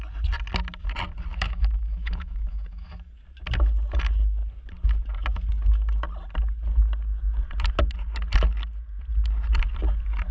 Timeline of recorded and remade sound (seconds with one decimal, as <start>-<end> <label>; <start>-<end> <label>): 0.0-1.3 recorded; 1.3-3.1 remade; 3.1-10.3 recorded